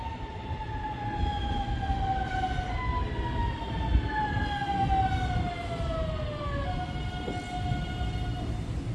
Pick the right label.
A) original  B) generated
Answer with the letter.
A